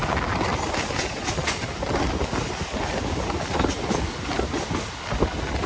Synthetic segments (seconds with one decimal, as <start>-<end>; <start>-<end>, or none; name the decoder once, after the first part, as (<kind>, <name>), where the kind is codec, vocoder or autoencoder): none